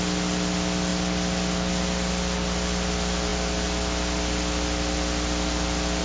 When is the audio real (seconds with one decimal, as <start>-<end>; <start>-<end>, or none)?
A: 0.0-6.0